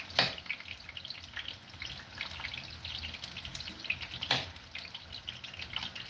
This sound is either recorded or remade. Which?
recorded